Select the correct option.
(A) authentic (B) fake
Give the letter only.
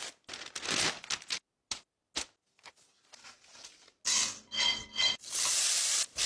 A